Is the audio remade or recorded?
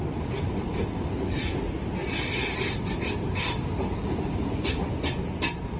recorded